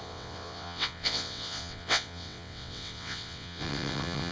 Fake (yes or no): yes